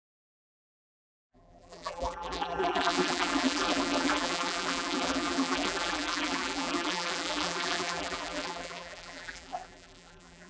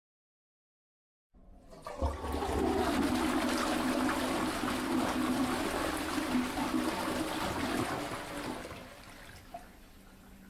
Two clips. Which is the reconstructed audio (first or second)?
first